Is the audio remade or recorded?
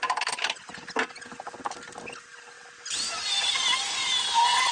recorded